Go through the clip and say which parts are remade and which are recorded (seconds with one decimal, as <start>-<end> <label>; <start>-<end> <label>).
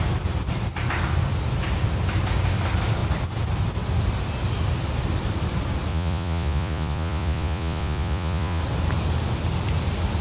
0.0-5.9 recorded; 5.9-8.6 remade; 8.6-10.2 recorded